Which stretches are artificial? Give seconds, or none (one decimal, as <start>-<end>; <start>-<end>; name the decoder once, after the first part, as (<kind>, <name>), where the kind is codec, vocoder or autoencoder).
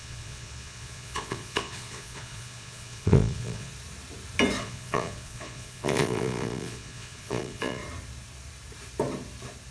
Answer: 0.0-3.7 (vocoder, Vocos); 4.6-7.8